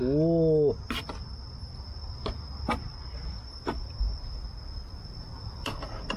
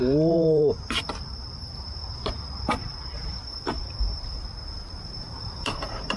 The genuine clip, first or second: first